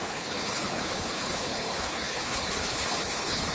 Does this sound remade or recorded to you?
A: remade